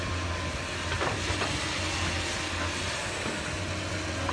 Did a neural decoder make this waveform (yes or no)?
no